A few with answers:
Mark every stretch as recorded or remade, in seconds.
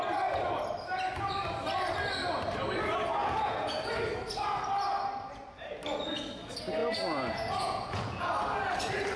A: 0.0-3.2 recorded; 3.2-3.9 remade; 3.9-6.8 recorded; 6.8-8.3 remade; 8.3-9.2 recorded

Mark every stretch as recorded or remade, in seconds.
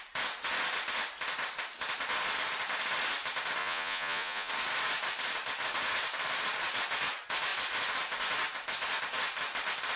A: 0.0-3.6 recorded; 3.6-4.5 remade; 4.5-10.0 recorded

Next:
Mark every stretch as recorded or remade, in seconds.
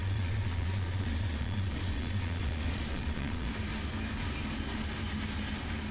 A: 0.0-3.5 remade; 3.5-5.9 recorded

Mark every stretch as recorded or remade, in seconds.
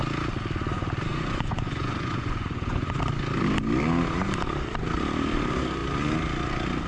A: 0.0-1.1 recorded; 1.1-3.0 remade; 3.0-6.9 recorded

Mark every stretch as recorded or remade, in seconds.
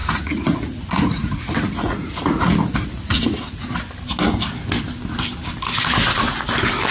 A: 0.0-3.7 remade; 3.7-6.0 recorded; 6.0-6.5 remade; 6.5-6.9 recorded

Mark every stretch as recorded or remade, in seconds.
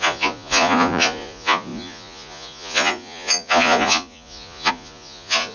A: 0.0-5.5 remade